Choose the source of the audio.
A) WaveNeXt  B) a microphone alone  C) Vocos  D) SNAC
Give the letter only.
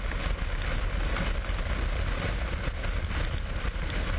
B